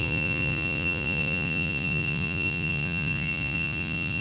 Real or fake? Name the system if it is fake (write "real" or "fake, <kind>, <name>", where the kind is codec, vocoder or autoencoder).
fake, vocoder, Vocos